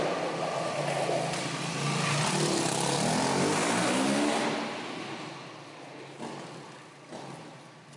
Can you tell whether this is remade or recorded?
recorded